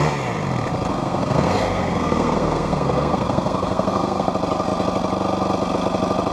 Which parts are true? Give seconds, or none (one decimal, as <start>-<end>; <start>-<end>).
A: 0.0-0.9; 4.3-6.3

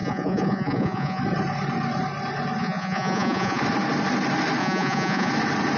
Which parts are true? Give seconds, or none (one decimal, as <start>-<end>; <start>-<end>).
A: 1.2-2.6; 3.6-4.6; 5.3-5.8

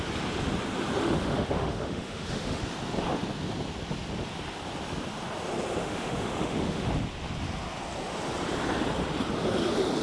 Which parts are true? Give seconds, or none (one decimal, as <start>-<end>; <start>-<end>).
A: 0.0-1.0; 2.6-5.8; 6.9-10.0

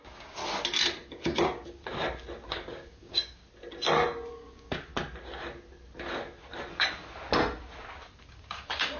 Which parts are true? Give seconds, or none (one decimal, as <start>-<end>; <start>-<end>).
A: 0.4-1.1; 1.8-2.5; 3.4-4.3; 4.9-8.2